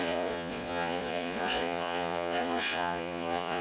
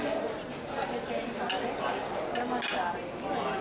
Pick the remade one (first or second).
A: first